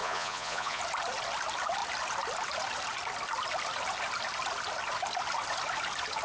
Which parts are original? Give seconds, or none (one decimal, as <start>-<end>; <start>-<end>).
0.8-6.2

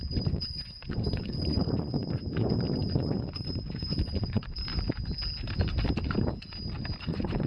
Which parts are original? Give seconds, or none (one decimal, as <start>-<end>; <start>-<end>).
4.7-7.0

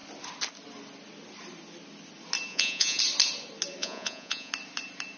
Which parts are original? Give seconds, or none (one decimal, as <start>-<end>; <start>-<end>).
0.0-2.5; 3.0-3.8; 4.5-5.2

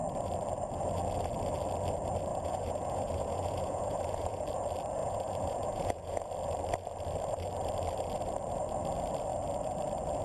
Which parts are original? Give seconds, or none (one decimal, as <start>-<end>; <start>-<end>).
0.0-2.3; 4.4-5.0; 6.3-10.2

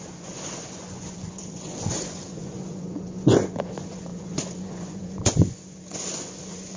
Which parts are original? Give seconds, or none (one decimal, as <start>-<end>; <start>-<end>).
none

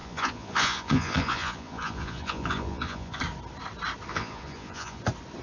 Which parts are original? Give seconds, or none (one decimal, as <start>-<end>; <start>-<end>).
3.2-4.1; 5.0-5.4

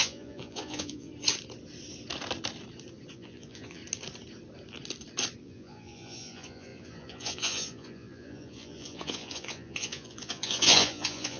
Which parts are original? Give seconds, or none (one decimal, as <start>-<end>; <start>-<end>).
1.1-3.1; 3.8-5.4

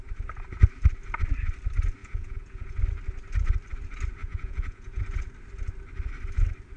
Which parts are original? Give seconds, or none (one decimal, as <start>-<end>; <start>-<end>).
0.0-2.0; 2.8-4.2; 5.0-6.8